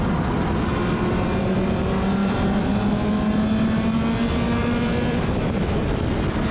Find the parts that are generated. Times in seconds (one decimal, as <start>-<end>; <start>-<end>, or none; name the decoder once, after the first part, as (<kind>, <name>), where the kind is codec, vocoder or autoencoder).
0.7-1.8 (vocoder, BigVGAN v2); 2.2-2.7; 4.6-6.1